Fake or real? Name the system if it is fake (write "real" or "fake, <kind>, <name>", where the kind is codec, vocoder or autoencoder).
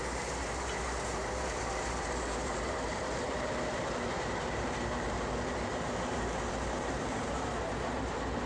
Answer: fake, vocoder, BigVGAN v2